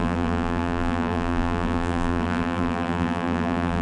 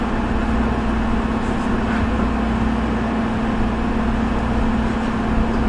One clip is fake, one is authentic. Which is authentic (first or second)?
second